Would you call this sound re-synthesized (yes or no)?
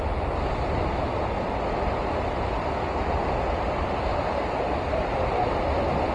no